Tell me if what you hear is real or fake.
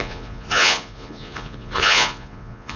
fake